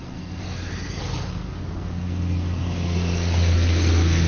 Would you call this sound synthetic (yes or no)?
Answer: yes